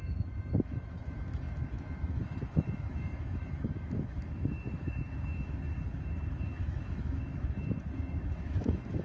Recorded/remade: remade